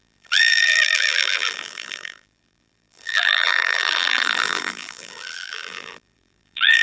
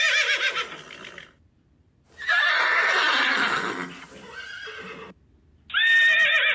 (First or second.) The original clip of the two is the second